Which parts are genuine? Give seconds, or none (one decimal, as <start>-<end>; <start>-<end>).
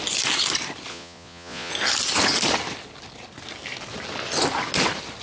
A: 0.0-0.9; 1.7-5.2